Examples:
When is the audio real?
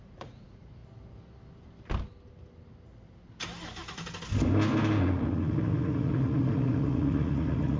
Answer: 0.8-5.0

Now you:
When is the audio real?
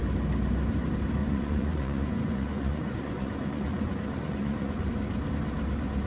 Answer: 0.0-1.2; 4.9-6.1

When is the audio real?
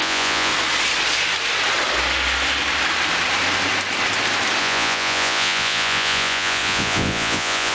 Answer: 0.5-4.6